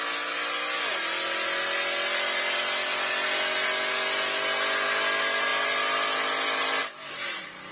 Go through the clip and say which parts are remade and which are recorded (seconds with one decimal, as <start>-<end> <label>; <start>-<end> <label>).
0.0-7.7 recorded